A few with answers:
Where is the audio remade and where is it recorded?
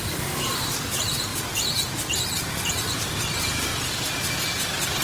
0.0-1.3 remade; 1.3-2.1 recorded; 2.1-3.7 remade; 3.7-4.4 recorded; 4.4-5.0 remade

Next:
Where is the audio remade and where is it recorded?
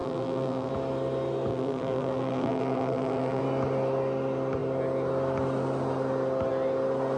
0.0-0.7 remade; 0.7-1.5 recorded; 1.5-3.4 remade; 3.4-7.2 recorded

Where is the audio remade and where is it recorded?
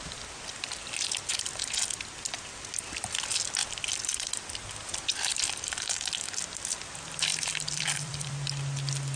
0.0-3.6 recorded; 3.6-5.9 remade; 5.9-7.3 recorded; 7.3-8.3 remade; 8.3-9.2 recorded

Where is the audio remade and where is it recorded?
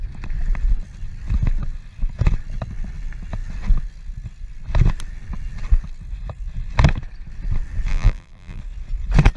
0.0-7.9 recorded; 7.9-8.6 remade; 8.6-9.4 recorded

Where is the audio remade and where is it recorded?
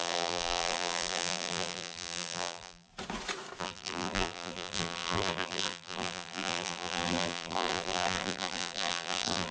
0.0-2.9 remade; 2.9-3.6 recorded; 3.6-9.5 remade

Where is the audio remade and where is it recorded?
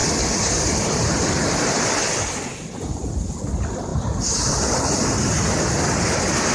0.0-3.9 recorded; 3.9-5.3 remade; 5.3-6.5 recorded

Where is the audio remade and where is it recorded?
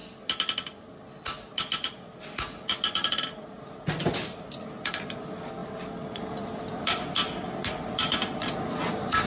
0.0-9.3 recorded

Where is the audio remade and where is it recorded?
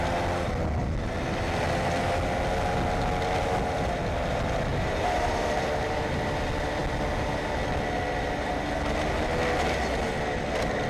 0.0-4.7 recorded; 4.7-6.1 remade; 6.1-10.9 recorded